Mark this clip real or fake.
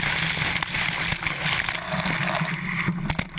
fake